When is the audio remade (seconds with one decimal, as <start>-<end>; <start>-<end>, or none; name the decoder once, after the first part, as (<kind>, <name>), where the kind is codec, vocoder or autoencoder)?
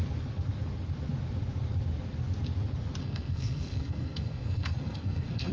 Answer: 3.0-5.5 (codec, SNAC)